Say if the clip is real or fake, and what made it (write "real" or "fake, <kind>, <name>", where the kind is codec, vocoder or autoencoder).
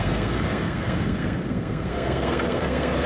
fake, codec, SNAC